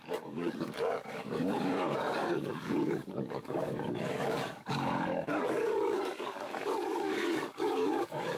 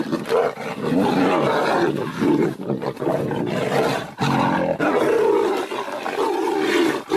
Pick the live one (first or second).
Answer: second